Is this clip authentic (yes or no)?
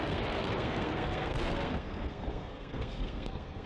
no